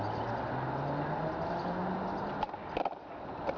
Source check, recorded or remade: recorded